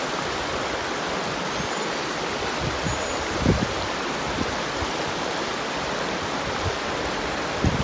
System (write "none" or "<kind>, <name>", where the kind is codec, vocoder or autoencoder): none